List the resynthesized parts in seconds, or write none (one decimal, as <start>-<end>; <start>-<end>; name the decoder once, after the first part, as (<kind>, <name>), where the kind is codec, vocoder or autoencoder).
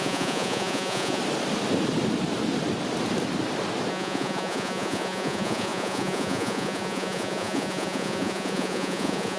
0.0-1.2 (vocoder, Vocos); 3.9-9.4